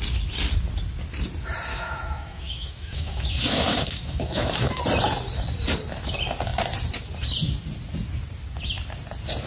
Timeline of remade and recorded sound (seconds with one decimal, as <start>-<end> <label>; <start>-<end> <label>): 0.0-1.7 recorded; 1.7-4.8 remade; 4.8-9.5 recorded